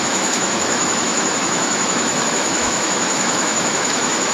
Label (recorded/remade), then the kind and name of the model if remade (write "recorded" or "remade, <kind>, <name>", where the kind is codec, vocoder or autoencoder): remade, autoencoder, DAC-VAE